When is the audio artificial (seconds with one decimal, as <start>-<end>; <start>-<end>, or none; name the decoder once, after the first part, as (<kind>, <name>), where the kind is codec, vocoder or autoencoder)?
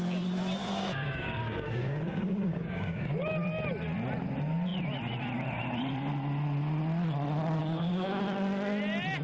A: 0.6-3.3 (codec, DAC); 7.6-8.2